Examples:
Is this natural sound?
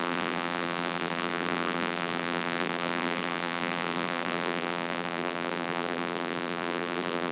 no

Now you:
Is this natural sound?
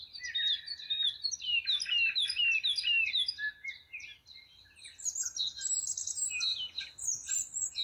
yes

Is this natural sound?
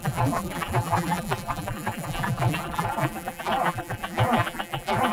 no